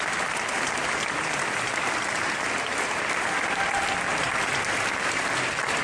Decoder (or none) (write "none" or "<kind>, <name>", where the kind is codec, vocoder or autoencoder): vocoder, BigVGAN v2